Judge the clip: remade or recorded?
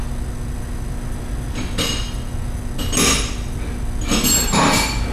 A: recorded